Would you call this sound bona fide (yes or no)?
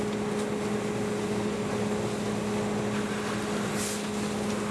yes